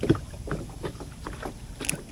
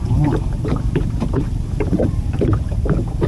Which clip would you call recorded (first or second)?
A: first